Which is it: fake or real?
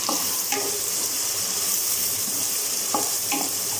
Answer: fake